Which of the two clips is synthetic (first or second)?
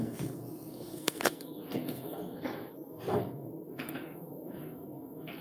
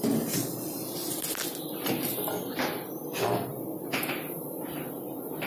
first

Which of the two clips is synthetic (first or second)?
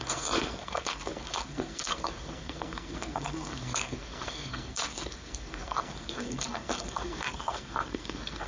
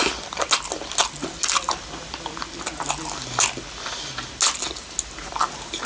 first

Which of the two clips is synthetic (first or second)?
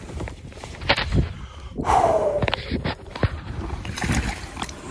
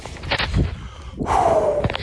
first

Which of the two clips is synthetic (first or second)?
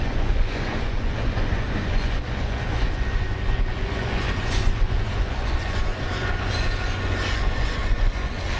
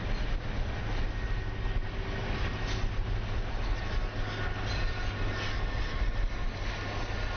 first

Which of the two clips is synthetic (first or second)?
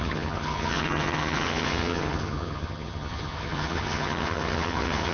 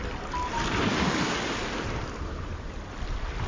first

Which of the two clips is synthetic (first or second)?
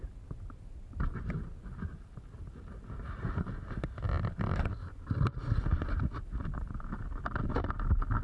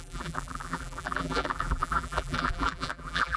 second